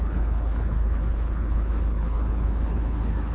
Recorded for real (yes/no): no